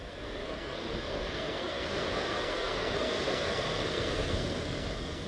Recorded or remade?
remade